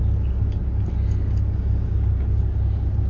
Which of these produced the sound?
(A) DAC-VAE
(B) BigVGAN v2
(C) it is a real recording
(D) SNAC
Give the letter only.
C